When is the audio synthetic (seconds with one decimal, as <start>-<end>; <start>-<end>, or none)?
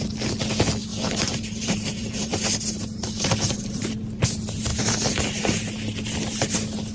0.9-3.9; 4.7-5.7